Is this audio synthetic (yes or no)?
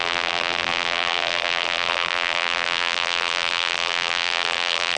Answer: yes